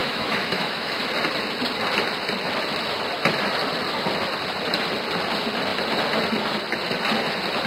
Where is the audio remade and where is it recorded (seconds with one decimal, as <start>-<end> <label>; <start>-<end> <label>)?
0.0-1.0 remade; 1.0-7.7 recorded